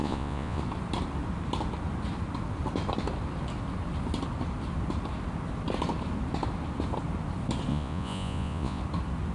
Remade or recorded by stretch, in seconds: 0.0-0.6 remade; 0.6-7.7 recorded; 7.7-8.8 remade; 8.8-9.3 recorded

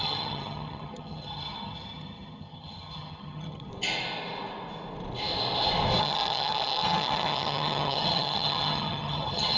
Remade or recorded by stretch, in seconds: 0.0-3.7 remade; 3.7-6.0 recorded; 6.0-9.6 remade